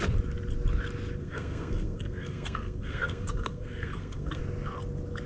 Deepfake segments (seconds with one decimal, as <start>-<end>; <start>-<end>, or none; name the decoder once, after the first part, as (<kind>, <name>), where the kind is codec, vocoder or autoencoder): 1.2-4.4 (codec, SNAC)

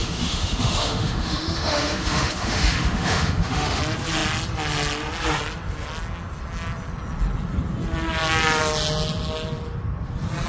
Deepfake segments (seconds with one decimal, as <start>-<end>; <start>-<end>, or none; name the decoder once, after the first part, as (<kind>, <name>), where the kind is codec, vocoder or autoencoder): 0.0-3.8 (autoencoder, DAC-VAE)

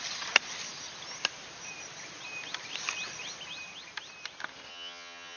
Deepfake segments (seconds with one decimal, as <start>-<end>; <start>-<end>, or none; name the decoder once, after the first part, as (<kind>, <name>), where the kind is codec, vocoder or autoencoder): 4.7-5.4 (vocoder, HiFi-GAN)